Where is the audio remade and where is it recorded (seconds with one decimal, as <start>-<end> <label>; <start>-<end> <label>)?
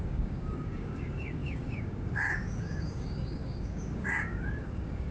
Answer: 0.0-5.1 remade